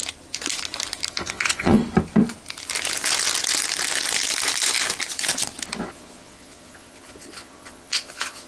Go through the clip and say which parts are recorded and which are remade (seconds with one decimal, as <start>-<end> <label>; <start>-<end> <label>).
0.0-1.1 recorded; 1.1-1.8 remade; 1.8-5.8 recorded; 5.8-8.5 remade